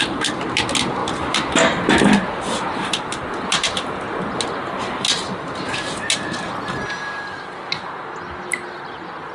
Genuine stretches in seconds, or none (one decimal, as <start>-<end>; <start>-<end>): 0.0-9.3